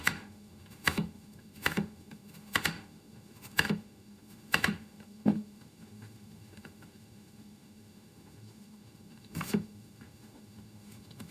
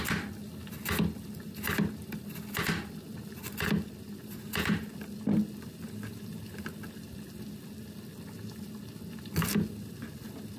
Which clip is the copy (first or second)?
first